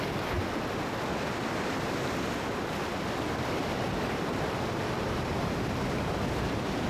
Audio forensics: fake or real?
real